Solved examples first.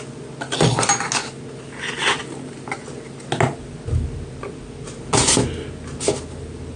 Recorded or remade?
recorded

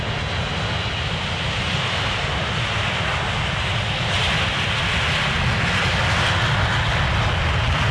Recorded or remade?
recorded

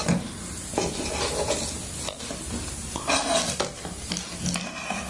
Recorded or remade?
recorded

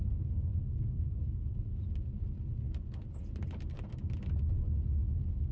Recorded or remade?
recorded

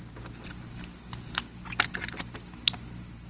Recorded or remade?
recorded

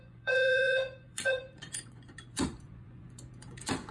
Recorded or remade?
remade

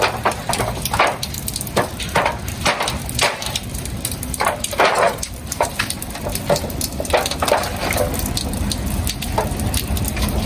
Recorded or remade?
remade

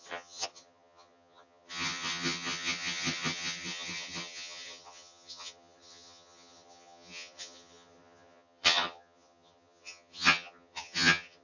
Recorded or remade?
remade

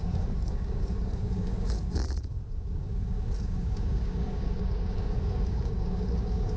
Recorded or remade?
remade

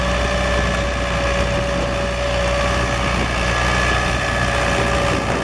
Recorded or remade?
recorded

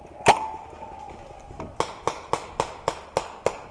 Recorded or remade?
recorded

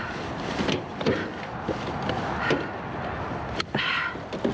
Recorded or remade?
recorded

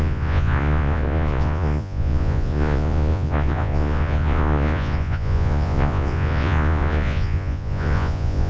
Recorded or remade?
remade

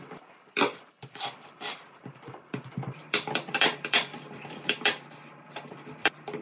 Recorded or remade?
remade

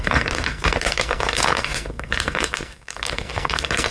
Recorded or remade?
remade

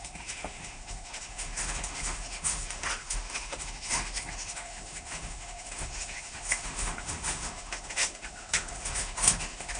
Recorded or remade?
remade